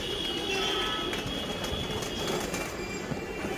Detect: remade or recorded recorded